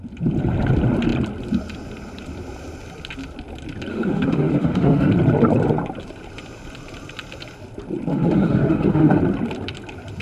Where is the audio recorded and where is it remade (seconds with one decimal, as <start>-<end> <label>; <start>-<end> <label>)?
0.0-3.9 recorded; 3.9-5.1 remade; 5.1-8.1 recorded; 8.1-9.2 remade; 9.2-10.2 recorded